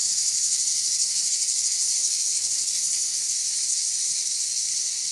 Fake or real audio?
fake